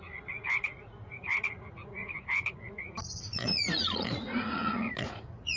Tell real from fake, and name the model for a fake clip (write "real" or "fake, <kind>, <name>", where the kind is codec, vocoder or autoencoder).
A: fake, vocoder, Vocos